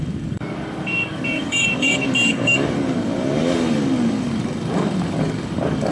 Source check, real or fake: fake